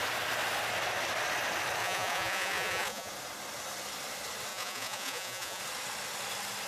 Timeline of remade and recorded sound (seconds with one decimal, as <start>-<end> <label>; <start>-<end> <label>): 0.0-1.8 recorded; 1.8-3.1 remade; 3.1-4.5 recorded; 4.5-5.6 remade; 5.6-6.7 recorded